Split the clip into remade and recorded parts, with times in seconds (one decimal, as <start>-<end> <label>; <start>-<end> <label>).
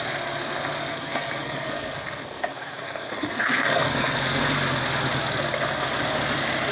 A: 0.0-0.9 recorded; 0.9-4.4 remade; 4.4-6.7 recorded